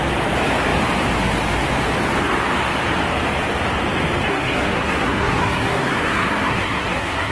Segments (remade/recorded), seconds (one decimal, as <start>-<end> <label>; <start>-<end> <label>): 0.0-4.3 recorded; 4.3-7.3 remade